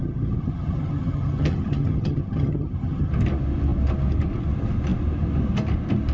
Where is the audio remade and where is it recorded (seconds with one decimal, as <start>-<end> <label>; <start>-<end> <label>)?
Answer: 0.0-3.1 remade; 3.1-6.1 recorded